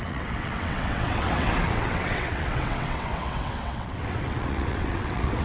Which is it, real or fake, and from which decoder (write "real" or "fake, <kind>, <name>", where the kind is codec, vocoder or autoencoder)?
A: fake, vocoder, WaveNeXt